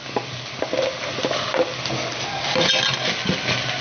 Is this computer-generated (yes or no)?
no